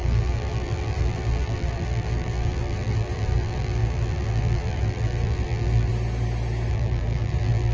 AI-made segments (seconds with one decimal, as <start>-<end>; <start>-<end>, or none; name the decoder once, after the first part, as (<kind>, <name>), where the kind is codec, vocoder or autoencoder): 0.0-5.9 (vocoder, BigVGAN v2); 6.7-7.7